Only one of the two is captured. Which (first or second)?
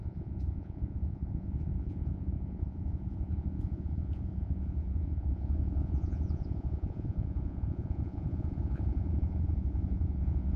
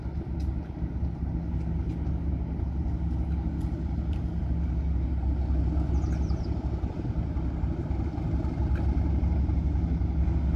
second